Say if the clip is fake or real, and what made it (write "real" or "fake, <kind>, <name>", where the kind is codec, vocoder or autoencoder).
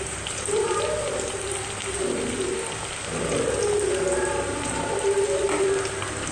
real